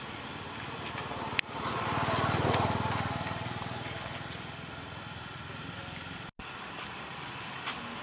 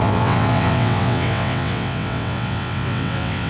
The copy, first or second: second